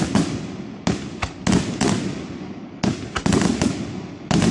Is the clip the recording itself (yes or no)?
no